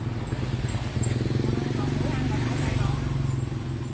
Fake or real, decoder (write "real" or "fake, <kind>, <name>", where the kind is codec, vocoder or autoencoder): real